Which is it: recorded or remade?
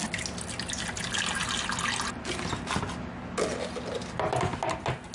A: recorded